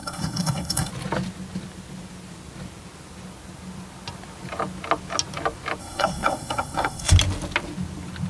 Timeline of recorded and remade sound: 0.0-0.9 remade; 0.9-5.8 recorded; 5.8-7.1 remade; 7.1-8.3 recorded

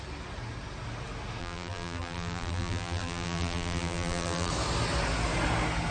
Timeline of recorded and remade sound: 0.0-1.4 recorded; 1.4-4.5 remade; 4.5-5.9 recorded

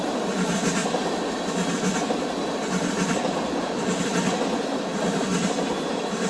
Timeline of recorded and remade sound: 0.0-6.3 recorded

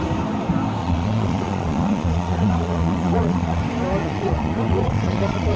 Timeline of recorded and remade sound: 0.0-0.8 recorded; 0.8-3.6 remade; 3.6-4.0 recorded; 4.0-5.6 remade

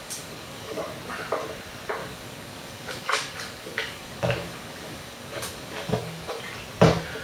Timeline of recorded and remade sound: 0.0-0.8 remade; 0.8-2.0 recorded; 2.0-6.3 remade; 6.3-7.2 recorded

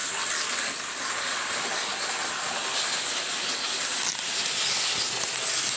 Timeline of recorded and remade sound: 0.0-5.8 recorded

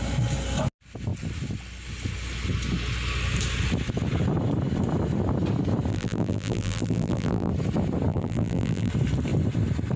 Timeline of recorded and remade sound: 0.0-5.9 recorded; 5.9-7.5 remade; 7.5-8.1 recorded; 8.1-8.9 remade; 8.9-10.0 recorded